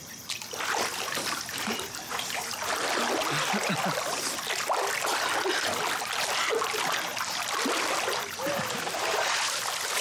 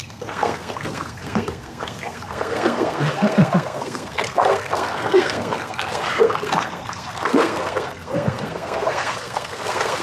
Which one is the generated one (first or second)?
second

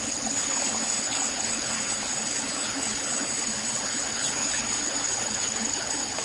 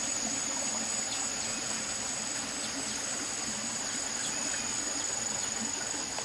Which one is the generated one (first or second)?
first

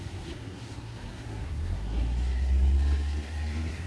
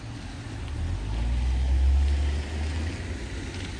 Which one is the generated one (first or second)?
first